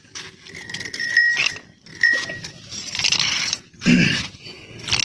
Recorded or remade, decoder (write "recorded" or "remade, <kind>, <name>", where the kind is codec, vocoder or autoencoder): recorded